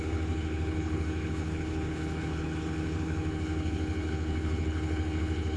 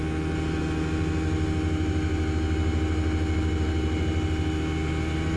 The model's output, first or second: first